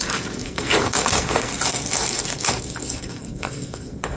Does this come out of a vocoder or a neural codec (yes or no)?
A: yes